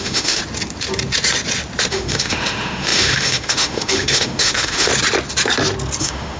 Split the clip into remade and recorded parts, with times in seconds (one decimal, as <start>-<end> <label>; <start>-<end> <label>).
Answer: 0.0-0.4 remade; 0.4-1.9 recorded; 1.9-4.9 remade; 4.9-6.0 recorded; 6.0-6.4 remade